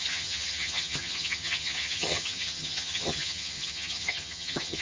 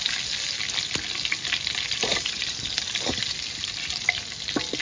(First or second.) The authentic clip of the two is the second